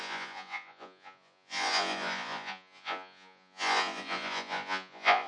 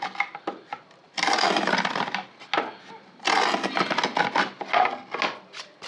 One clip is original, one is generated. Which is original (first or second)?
second